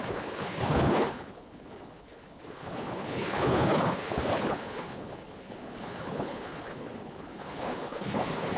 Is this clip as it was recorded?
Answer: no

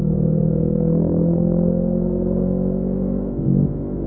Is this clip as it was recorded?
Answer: no